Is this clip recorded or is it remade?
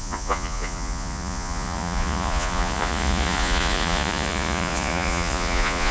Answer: remade